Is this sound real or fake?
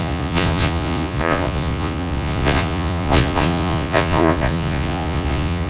fake